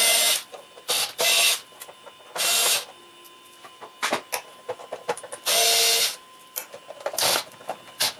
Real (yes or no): yes